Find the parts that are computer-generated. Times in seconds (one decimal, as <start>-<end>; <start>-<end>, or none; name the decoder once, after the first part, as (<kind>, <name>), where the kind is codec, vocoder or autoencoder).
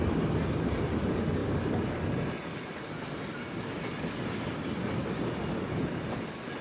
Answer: none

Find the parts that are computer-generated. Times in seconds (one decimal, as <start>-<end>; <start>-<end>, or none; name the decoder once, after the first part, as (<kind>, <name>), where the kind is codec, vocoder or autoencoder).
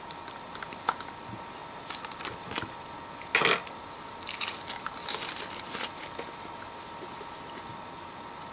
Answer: none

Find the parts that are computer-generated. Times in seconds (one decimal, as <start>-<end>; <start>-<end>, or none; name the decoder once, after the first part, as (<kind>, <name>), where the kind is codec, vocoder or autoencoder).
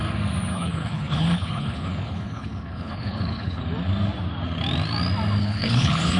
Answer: 0.5-3.6 (codec, HILCodec); 5.4-6.2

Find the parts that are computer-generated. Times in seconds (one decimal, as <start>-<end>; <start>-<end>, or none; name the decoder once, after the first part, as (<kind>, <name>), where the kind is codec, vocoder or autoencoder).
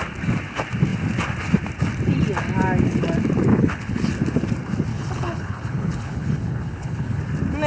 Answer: 3.5-4.1 (codec, HILCodec); 4.9-7.2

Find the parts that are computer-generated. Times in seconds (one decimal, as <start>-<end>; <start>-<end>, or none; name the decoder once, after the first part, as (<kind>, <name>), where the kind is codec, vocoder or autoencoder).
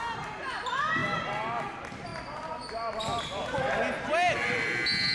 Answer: none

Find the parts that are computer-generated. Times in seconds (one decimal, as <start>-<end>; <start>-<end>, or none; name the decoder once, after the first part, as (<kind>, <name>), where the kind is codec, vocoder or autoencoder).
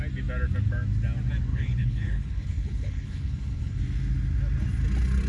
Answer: 1.5-3.8 (codec, HILCodec)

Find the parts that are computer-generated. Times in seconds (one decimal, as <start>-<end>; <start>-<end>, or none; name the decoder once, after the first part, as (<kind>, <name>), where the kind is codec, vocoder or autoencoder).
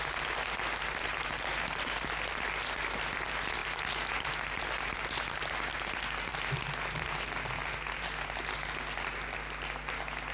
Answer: none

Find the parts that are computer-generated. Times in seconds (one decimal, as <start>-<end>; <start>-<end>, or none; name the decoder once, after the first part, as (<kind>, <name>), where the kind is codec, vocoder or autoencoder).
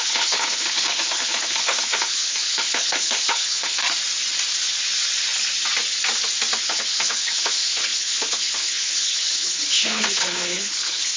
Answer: 0.0-3.8 (codec, HILCodec); 6.6-11.2